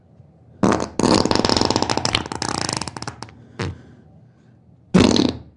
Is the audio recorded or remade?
recorded